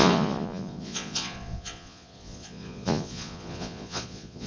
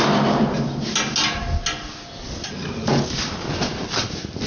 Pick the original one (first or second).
second